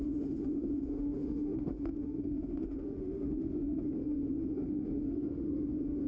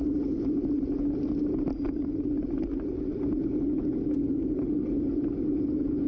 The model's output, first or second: first